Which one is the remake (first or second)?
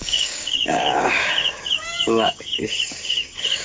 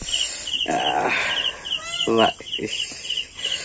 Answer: first